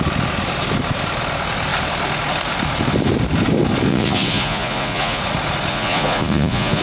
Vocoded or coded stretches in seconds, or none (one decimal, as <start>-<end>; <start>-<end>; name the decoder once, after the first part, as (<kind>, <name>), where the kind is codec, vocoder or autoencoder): 3.9-5.2 (vocoder, Vocos); 5.7-6.8